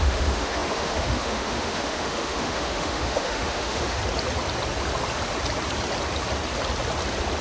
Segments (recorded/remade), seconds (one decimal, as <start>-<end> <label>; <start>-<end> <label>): 0.0-4.0 remade; 4.0-7.4 recorded